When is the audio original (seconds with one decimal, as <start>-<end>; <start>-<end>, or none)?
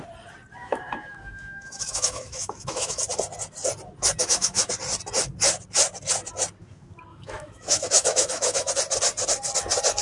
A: 0.0-0.6; 3.0-4.2; 4.7-7.1; 8.7-10.0